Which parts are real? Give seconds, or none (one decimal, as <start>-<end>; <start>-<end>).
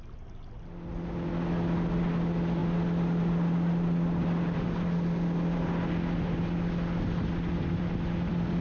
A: 0.0-8.6